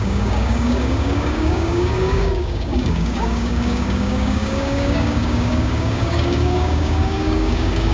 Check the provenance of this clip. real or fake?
fake